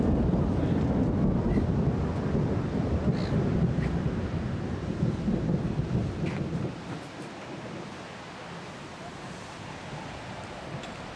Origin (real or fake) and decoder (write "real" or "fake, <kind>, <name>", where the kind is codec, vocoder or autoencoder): real